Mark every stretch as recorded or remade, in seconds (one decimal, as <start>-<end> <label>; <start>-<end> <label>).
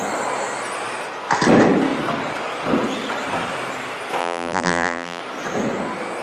0.0-4.2 recorded; 4.2-5.2 remade; 5.2-6.2 recorded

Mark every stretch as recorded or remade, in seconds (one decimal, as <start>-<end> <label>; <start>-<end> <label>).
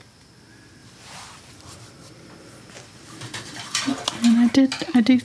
0.0-0.8 recorded; 0.8-3.9 remade; 3.9-5.2 recorded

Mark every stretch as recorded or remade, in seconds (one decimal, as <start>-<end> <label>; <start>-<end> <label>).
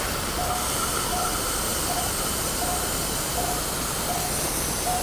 0.0-5.0 recorded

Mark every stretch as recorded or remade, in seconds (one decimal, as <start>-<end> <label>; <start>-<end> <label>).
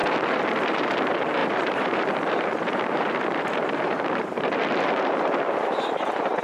0.0-6.4 remade